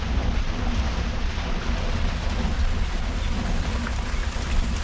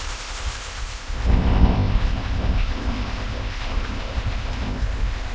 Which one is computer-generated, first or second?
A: second